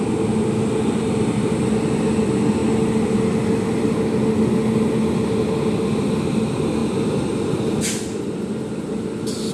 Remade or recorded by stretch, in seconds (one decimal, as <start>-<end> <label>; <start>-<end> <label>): 0.0-9.5 recorded